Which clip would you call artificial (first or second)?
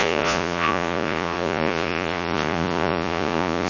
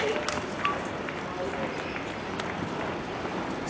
first